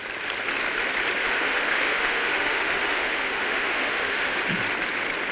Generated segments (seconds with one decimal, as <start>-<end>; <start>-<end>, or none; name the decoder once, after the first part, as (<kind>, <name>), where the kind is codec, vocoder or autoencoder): 1.2-4.4 (autoencoder, DAC-VAE)